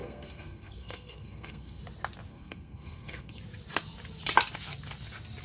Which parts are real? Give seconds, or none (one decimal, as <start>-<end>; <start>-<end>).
1.8-2.3; 3.4-5.4